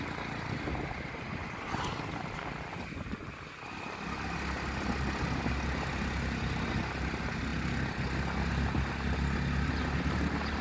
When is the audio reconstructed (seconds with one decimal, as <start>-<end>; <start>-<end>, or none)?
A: none